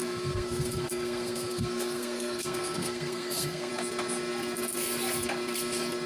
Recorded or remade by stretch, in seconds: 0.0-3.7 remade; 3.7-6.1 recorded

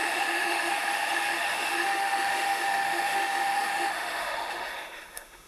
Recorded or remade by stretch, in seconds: 0.0-5.5 remade

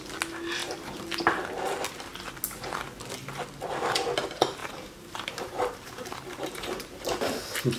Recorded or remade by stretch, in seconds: 0.0-4.6 recorded; 4.6-7.3 remade; 7.3-7.8 recorded

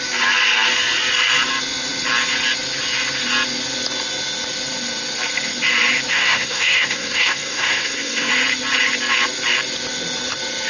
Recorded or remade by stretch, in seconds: 0.0-6.1 recorded; 6.1-8.3 remade; 8.3-10.7 recorded

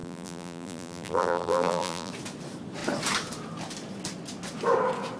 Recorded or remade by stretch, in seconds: 0.0-2.1 remade; 2.1-5.2 recorded

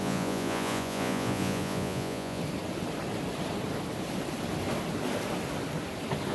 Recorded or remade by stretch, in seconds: 0.0-2.4 remade; 2.4-6.3 recorded

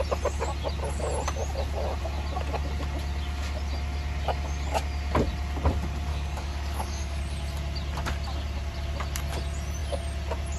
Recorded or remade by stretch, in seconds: 0.0-6.1 recorded; 6.1-7.2 remade; 7.2-10.6 recorded

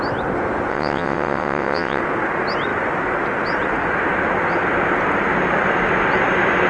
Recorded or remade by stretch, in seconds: 0.0-0.7 recorded; 0.7-2.0 remade; 2.0-6.7 recorded